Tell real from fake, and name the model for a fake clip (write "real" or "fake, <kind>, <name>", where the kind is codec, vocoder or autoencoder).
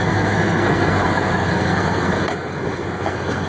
fake, codec, SNAC